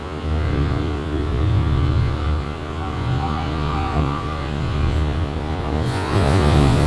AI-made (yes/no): yes